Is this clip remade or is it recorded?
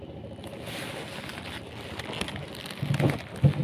recorded